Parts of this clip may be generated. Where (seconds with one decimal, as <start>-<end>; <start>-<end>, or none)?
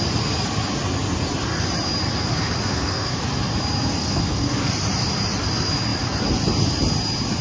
2.7-3.2; 4.0-4.7